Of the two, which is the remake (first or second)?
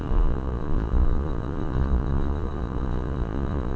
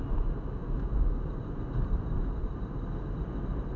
first